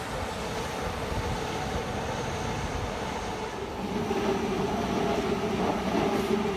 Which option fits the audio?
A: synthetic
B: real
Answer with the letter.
B